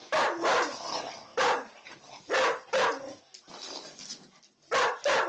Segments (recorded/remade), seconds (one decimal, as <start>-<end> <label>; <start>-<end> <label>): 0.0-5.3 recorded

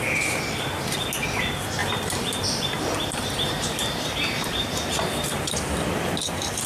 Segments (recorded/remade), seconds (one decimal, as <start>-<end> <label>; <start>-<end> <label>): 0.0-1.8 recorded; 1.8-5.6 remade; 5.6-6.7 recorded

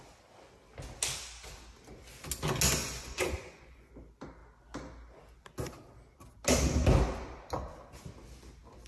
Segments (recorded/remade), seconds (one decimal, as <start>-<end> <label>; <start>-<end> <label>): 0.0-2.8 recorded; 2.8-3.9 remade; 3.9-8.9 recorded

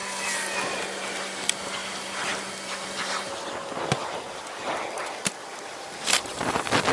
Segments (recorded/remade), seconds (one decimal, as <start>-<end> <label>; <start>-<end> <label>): 0.0-0.8 remade; 0.8-1.8 recorded; 1.8-3.3 remade; 3.3-5.0 recorded; 5.0-5.7 remade; 5.7-6.9 recorded

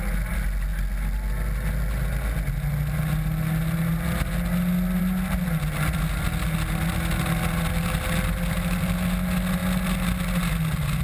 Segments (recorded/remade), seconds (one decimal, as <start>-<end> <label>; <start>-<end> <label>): 0.0-11.0 recorded